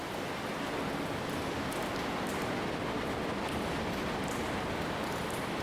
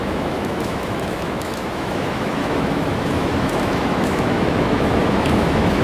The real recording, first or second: first